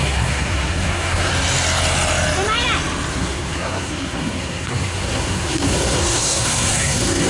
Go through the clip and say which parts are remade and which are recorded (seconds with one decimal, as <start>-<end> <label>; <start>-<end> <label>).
0.0-1.3 remade; 1.3-3.1 recorded; 3.1-7.3 remade